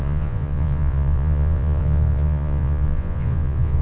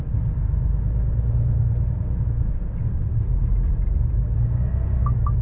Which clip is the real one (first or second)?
second